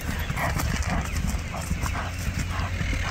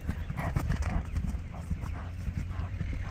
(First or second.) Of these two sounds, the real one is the first